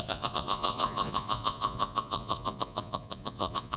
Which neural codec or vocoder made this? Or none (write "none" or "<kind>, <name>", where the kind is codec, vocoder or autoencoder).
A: vocoder, Vocos